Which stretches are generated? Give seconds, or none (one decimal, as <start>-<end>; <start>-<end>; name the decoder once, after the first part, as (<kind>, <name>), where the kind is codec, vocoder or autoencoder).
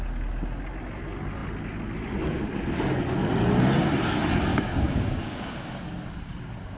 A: 4.5-5.7 (codec, DAC)